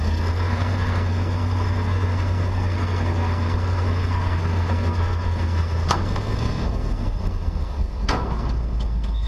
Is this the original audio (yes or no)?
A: no